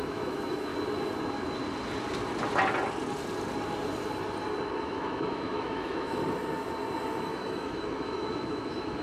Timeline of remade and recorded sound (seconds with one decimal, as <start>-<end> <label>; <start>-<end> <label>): 0.0-0.7 remade; 0.7-4.8 recorded; 4.8-6.2 remade; 6.2-7.2 recorded; 7.2-9.0 remade